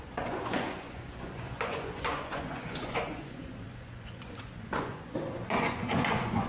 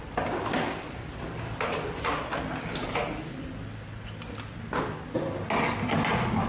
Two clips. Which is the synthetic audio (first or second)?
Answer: first